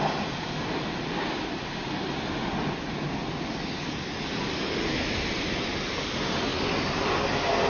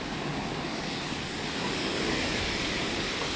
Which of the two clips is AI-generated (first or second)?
second